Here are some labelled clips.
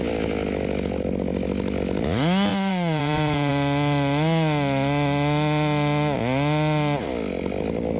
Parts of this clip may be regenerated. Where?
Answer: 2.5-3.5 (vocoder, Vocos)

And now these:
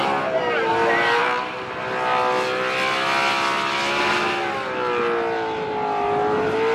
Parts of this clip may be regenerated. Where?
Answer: none

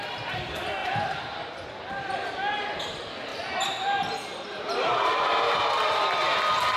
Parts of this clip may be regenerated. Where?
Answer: 0.8-1.8 (vocoder, BigVGAN v2); 3.3-5.7

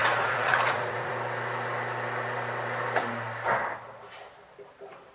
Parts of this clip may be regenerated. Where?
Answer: 0.0-1.1 (vocoder, Vocos)

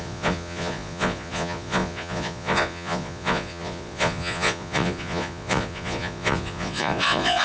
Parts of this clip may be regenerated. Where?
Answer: 0.0-7.4 (vocoder, Vocos)

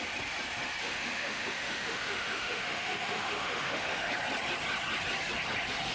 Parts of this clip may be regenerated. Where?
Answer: 0.8-4.1 (autoencoder, DAC-VAE)